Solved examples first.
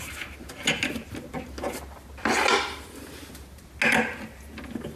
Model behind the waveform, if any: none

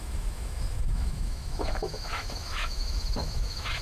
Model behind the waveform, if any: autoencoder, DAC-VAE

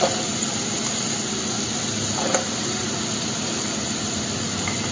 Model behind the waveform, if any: none